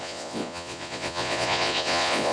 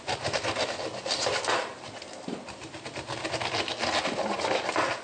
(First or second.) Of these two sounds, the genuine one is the second